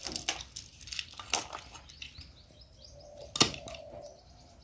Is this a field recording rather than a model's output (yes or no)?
yes